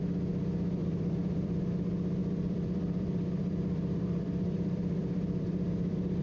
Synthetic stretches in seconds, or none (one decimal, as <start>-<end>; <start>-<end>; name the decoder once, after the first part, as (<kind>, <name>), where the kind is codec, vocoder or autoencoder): 0.8-1.6 (vocoder, BigVGAN v2); 2.2-6.2